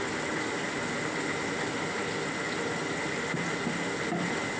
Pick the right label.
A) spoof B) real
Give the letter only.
B